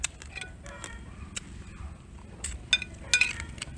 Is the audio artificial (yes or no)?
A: no